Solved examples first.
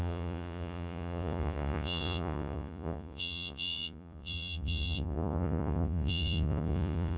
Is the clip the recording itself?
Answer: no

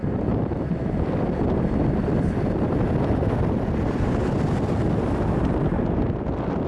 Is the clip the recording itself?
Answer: yes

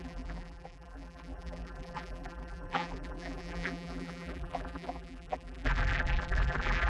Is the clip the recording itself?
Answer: no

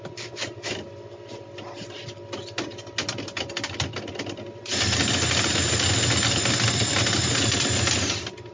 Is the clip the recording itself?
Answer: yes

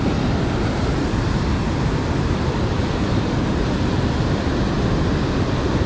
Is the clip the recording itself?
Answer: yes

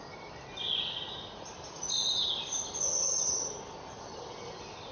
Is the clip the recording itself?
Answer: yes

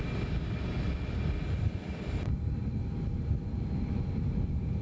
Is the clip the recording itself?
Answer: yes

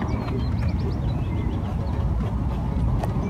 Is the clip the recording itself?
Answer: yes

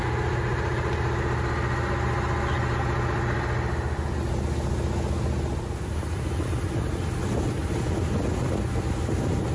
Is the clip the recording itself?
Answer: yes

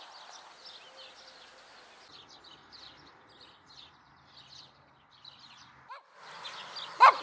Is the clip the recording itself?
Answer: yes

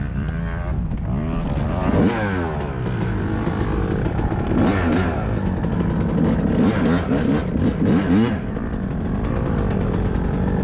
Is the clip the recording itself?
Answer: yes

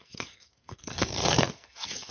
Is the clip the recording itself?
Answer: no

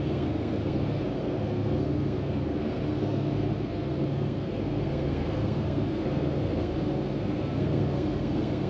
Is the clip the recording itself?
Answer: no